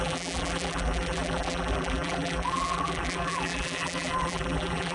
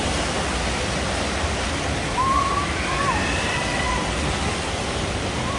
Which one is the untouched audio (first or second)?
second